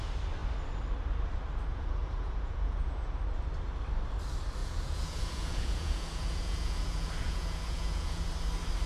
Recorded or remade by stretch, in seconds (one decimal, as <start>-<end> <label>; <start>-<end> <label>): 0.0-1.7 recorded; 1.7-3.2 remade; 3.2-4.6 recorded; 4.6-8.3 remade; 8.3-8.9 recorded

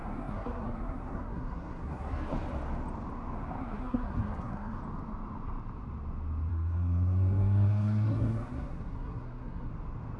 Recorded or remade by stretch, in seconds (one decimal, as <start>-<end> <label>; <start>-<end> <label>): 0.0-2.3 remade; 2.3-3.6 recorded; 3.6-4.8 remade; 4.8-6.5 recorded; 6.5-9.7 remade; 9.7-10.2 recorded

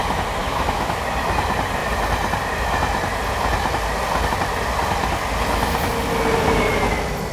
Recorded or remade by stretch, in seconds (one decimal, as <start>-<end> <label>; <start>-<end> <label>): 0.0-0.4 recorded; 0.4-1.0 remade; 1.0-7.3 recorded

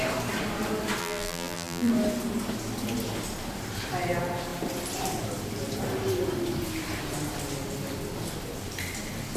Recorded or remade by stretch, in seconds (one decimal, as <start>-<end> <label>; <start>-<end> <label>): 0.0-1.0 recorded; 1.0-1.9 remade; 1.9-9.4 recorded

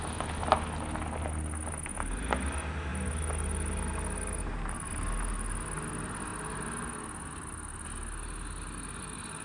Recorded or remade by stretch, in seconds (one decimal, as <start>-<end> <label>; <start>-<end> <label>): 0.0-9.4 recorded

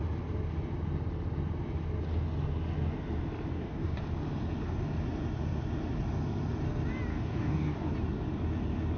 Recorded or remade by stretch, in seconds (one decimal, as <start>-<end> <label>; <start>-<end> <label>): 0.0-3.5 recorded; 3.5-4.0 remade; 4.0-7.1 recorded; 7.1-7.9 remade; 7.9-9.0 recorded